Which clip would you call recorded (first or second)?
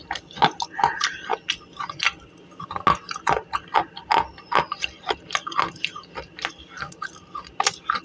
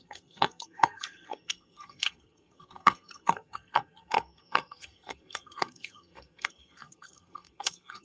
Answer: first